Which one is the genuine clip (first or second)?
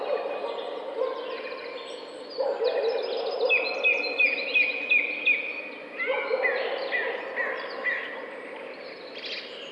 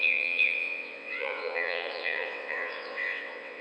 first